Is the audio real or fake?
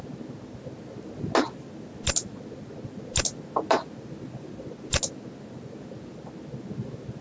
real